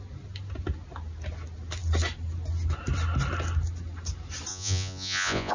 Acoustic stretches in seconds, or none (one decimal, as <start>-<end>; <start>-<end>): 0.0-4.5